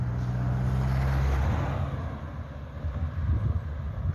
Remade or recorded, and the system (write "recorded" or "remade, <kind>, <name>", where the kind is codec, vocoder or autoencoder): recorded